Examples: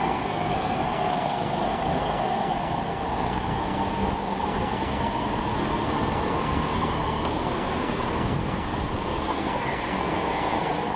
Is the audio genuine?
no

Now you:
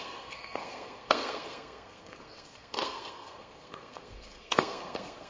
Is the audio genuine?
no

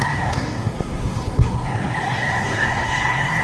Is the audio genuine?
no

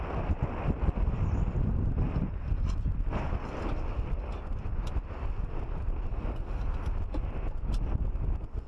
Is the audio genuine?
yes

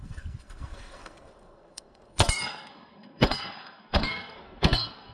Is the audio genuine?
no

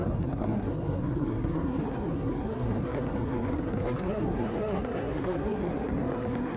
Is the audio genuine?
no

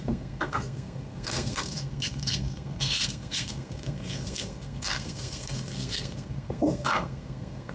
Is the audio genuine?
no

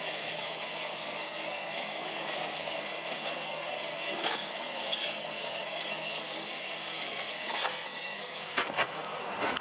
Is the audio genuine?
no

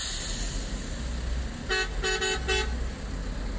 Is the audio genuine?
yes